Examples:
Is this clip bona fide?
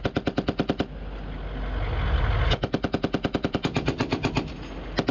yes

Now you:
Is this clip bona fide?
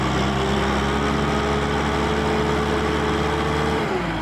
yes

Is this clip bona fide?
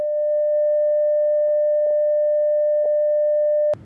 yes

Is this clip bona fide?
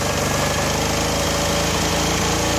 yes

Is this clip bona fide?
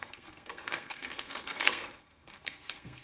no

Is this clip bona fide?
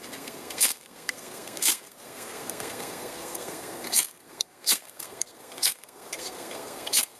no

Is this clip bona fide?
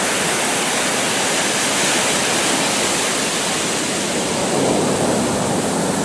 yes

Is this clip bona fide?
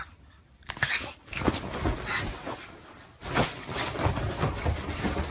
yes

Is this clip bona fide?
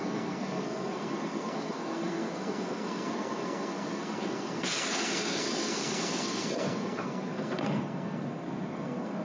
no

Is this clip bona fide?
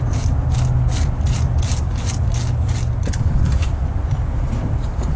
yes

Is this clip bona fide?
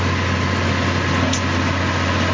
yes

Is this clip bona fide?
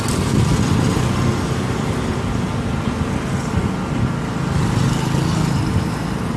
yes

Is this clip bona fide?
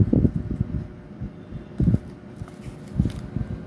yes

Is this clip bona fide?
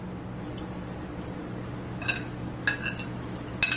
yes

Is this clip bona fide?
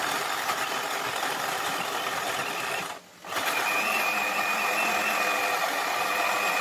yes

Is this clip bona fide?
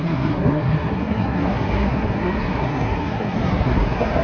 no